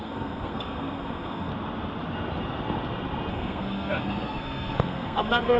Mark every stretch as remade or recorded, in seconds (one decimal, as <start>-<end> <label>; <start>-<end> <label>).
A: 0.0-1.5 remade; 1.5-3.3 recorded; 3.3-5.6 remade